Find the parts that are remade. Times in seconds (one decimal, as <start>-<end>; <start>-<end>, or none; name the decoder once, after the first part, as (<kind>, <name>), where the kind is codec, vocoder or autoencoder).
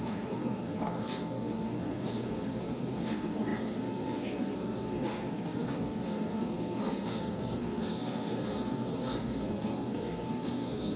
0.0-11.0 (codec, SNAC)